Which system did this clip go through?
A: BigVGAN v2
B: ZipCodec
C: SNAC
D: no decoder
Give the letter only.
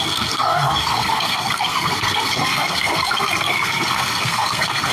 C